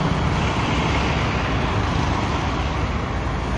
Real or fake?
real